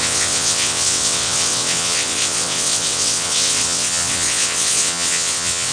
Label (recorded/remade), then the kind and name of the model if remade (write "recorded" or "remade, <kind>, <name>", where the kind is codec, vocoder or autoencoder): remade, vocoder, WaveNeXt